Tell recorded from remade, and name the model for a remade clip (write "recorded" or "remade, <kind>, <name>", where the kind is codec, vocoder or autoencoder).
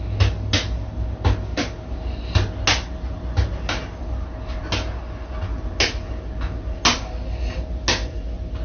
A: recorded